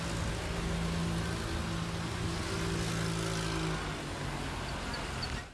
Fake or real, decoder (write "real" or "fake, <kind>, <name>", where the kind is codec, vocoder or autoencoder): real